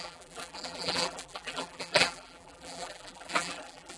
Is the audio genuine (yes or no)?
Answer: no